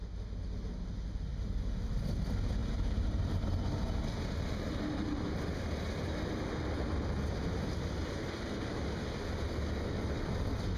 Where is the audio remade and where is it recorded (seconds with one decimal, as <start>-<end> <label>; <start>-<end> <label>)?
0.0-1.3 recorded; 1.3-2.0 remade; 2.0-2.6 recorded; 2.6-3.4 remade; 3.4-10.8 recorded